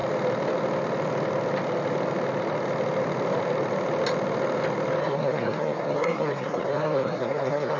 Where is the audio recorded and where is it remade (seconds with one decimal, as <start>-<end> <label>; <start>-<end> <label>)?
0.0-5.0 recorded; 5.0-7.8 remade